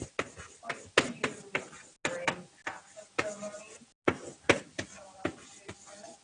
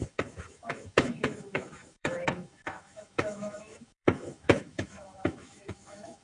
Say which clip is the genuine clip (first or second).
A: first